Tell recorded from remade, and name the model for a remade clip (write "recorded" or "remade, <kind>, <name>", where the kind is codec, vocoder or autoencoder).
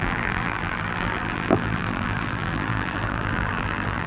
remade, vocoder, BigVGAN v2